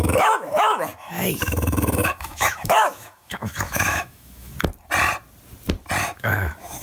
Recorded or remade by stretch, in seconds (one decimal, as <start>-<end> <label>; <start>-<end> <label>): 0.0-4.5 remade; 4.5-6.0 recorded; 6.0-6.8 remade